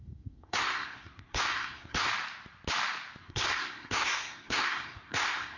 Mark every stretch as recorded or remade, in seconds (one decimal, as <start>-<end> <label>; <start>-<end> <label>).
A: 0.0-2.1 remade; 2.1-3.2 recorded; 3.2-5.6 remade